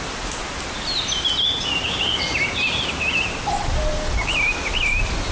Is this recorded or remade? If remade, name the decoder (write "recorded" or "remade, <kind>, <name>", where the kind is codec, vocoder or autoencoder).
recorded